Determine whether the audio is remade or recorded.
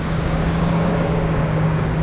remade